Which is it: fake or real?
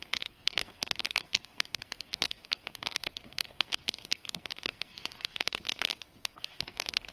fake